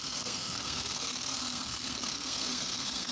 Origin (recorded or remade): remade